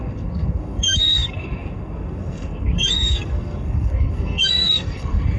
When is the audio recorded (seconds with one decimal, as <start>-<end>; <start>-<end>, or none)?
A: none